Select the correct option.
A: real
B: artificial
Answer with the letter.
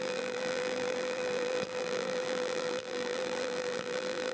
B